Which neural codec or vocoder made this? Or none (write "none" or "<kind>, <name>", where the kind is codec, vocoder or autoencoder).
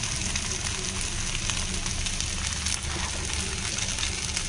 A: none